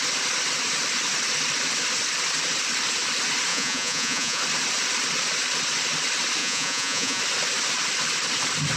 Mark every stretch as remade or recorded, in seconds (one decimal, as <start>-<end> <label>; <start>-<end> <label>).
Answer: 0.0-3.5 recorded; 3.5-4.4 remade; 4.4-6.4 recorded; 6.4-7.2 remade; 7.2-8.8 recorded